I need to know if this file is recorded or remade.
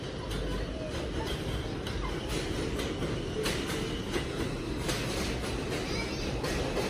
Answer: recorded